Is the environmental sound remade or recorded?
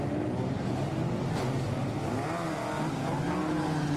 recorded